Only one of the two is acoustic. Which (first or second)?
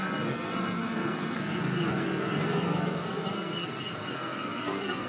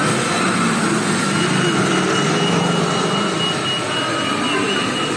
second